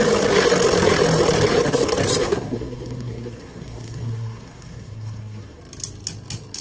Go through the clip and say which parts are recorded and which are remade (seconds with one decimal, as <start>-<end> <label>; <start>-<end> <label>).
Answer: 0.0-2.2 recorded; 2.2-5.6 remade; 5.6-6.6 recorded